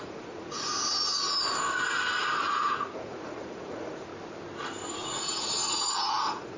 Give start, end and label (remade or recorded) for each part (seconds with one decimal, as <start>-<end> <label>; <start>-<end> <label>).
0.0-0.7 remade; 0.7-2.5 recorded; 2.5-4.1 remade; 4.1-4.9 recorded; 4.9-6.6 remade